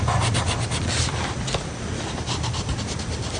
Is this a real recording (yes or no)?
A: yes